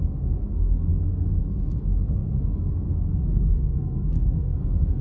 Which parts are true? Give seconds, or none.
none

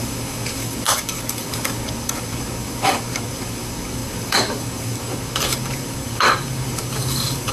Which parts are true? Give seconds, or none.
none

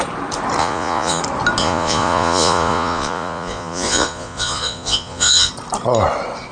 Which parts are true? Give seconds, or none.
0.0-0.6; 1.2-1.6; 5.5-6.5

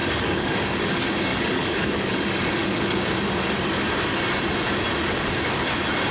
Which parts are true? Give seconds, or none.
0.9-1.3; 3.1-6.1

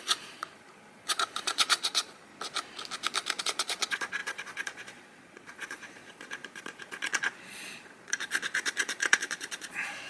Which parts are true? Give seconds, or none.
2.3-3.4

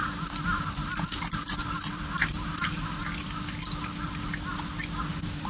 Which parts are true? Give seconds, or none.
3.0-5.1

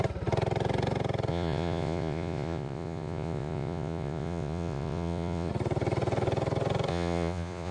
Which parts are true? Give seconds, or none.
0.0-1.3; 5.5-6.9

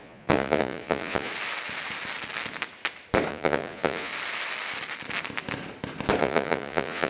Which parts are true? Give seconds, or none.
1.3-3.3; 4.1-6.2